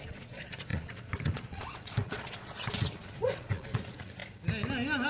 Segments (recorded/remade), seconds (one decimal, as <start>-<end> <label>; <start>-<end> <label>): 0.0-4.2 remade; 4.2-5.1 recorded